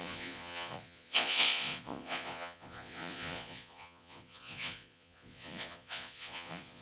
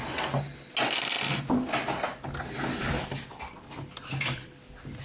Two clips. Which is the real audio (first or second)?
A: second